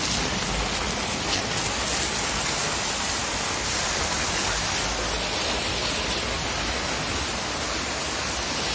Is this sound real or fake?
real